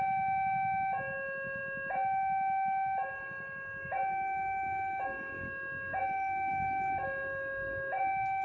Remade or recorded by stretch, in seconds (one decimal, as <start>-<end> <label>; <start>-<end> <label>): 0.0-8.4 recorded